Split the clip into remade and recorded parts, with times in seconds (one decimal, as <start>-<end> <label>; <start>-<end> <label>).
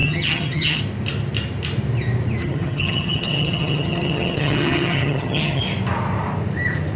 0.0-0.8 remade; 0.8-2.4 recorded; 2.4-5.6 remade; 5.6-7.0 recorded